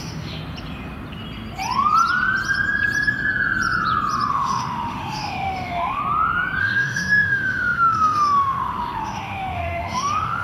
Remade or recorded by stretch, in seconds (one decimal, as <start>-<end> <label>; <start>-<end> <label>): 0.0-0.4 remade; 0.4-4.3 recorded; 4.3-6.0 remade; 6.0-6.6 recorded; 6.6-10.4 remade